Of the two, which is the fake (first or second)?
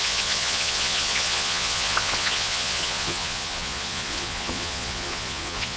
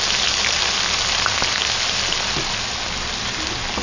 first